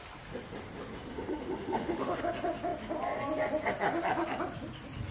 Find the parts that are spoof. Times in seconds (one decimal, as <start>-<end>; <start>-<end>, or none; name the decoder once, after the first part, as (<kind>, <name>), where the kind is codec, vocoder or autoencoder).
1.1-2.2 (autoencoder, DAC-VAE)